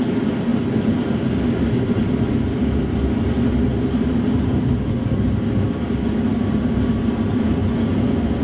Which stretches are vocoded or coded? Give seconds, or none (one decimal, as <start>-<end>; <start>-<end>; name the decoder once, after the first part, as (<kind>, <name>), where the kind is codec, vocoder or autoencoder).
none